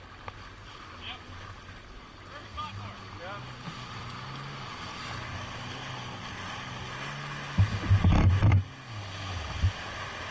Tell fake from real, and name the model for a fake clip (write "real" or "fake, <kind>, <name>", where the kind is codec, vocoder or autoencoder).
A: real